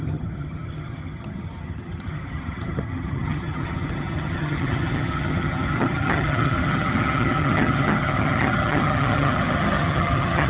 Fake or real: fake